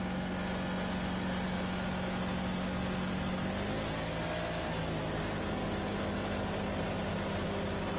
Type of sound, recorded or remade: recorded